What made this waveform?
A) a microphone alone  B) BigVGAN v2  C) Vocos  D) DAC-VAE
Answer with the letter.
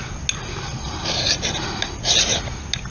A